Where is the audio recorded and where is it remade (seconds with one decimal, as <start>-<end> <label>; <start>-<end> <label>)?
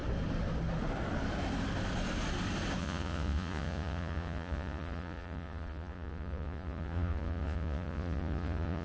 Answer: 0.0-2.8 recorded; 2.8-8.8 remade